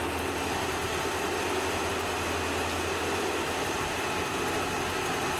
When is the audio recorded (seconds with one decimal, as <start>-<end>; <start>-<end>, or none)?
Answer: 0.0-5.4